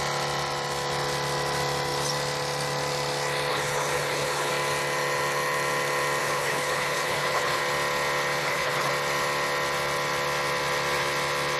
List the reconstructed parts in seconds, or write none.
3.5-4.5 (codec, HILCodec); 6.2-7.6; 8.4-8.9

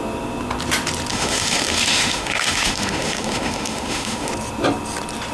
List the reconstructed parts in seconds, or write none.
1.1-4.3 (autoencoder, DAC-VAE)